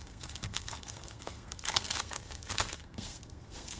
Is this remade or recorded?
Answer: remade